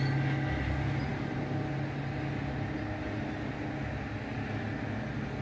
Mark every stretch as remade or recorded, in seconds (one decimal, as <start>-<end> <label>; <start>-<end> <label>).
0.0-5.4 recorded

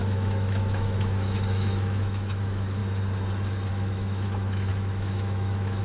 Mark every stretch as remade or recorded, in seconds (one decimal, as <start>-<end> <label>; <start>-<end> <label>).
0.0-2.8 remade; 2.8-3.7 recorded; 3.7-5.8 remade